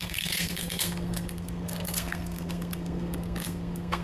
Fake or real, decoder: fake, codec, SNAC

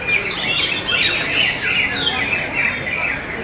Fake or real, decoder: real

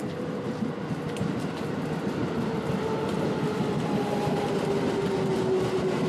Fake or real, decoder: real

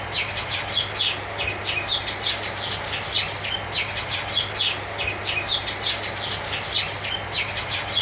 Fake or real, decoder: real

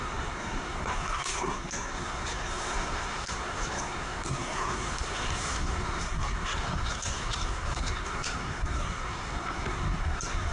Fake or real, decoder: fake, codec, SNAC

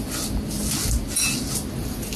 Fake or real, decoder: real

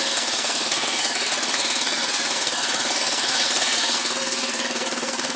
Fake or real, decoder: fake, codec, SNAC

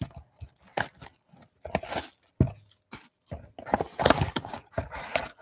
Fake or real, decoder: real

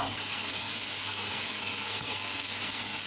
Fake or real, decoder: fake, codec, SNAC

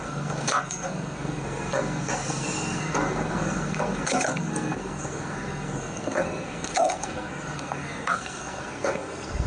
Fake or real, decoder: fake, codec, SNAC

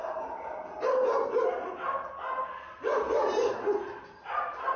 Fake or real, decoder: real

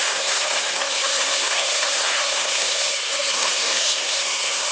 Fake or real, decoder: fake, codec, SNAC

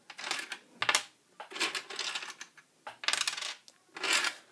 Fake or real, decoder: real